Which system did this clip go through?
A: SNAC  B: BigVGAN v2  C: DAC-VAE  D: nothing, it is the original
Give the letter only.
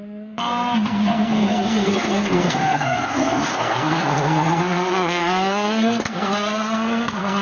A